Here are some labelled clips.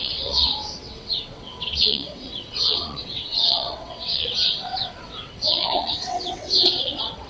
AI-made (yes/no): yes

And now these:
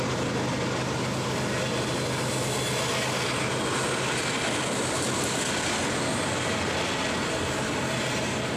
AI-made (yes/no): no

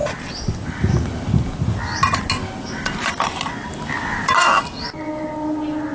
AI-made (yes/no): no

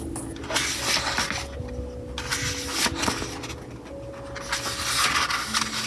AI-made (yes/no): no